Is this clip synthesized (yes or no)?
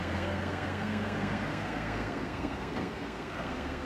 yes